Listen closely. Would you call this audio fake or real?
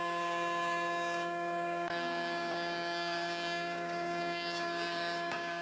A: fake